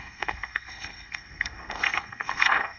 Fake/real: fake